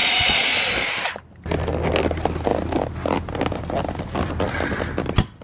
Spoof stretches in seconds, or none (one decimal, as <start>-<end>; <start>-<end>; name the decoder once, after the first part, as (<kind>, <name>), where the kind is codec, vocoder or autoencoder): 0.0-0.7 (vocoder, Vocos)